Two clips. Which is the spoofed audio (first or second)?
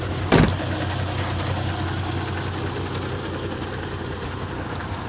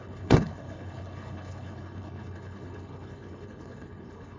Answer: second